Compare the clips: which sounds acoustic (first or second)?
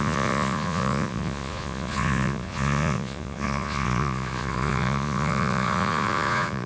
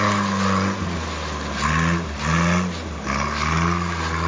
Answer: second